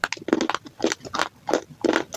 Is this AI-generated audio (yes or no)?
no